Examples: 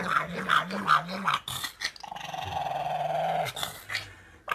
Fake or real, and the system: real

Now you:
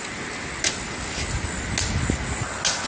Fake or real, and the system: real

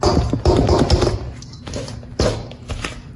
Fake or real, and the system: real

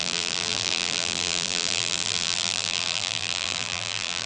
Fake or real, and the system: fake, vocoder, BigVGAN v2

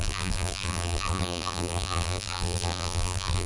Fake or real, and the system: fake, vocoder, BigVGAN v2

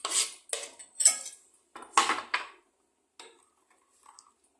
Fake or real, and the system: real